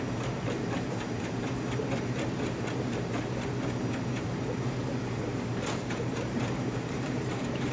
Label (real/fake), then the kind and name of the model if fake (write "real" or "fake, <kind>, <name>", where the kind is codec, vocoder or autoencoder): fake, vocoder, BigVGAN v2